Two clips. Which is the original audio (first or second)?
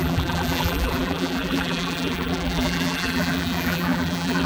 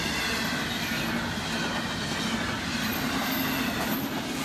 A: second